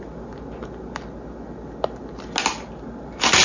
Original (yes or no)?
yes